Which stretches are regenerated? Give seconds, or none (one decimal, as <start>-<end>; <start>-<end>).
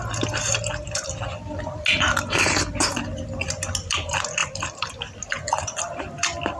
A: 4.4-4.9